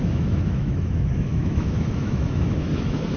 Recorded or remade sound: remade